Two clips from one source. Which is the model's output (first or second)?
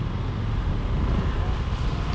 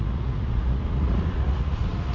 second